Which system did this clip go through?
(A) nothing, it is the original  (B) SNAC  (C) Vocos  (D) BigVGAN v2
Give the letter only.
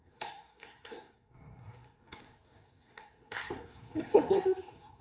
B